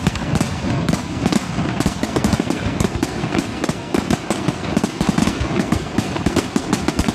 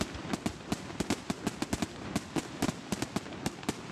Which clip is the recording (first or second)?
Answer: second